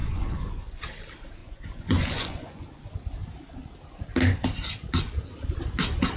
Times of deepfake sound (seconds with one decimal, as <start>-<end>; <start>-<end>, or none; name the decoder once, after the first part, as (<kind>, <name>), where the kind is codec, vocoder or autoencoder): 0.0-0.7 (vocoder, Vocos); 1.4-2.8